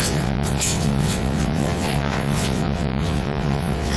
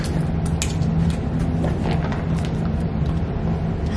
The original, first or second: second